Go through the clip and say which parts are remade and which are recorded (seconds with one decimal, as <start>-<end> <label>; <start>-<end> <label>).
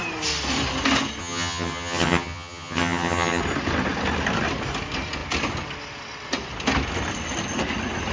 0.0-1.2 recorded; 1.2-3.4 remade; 3.4-8.1 recorded